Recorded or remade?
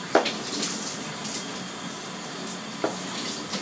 recorded